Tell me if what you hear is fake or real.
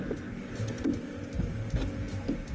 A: real